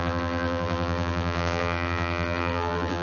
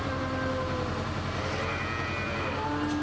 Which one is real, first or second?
second